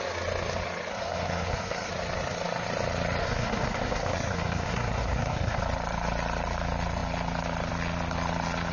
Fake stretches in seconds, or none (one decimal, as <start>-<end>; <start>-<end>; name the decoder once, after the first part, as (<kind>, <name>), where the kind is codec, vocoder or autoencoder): 0.9-1.9 (codec, SNAC); 3.2-5.6